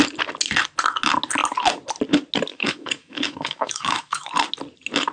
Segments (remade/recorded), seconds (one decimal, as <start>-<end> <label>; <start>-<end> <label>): 0.0-2.5 recorded; 2.5-4.3 remade; 4.3-5.1 recorded